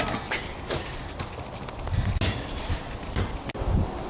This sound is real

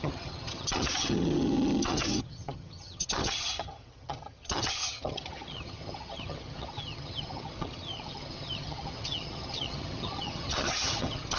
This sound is fake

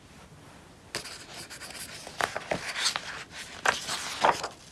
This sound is real